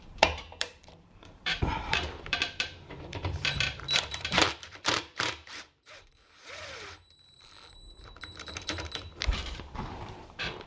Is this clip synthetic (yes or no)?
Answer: yes